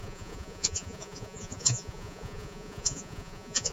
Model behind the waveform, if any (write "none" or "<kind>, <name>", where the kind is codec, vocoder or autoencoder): vocoder, Vocos